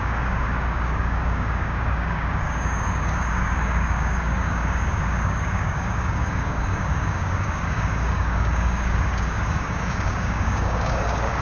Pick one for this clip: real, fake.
fake